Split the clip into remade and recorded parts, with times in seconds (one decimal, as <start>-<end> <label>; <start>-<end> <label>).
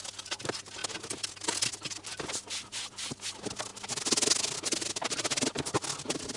0.0-6.4 recorded